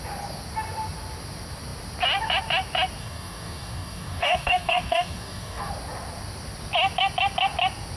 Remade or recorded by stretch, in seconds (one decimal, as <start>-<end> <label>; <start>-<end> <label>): 0.0-3.0 recorded; 3.0-5.7 remade; 5.7-8.0 recorded